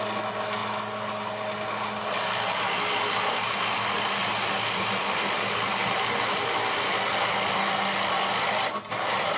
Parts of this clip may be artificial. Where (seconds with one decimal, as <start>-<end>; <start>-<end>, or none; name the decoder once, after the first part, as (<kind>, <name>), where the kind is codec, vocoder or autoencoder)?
none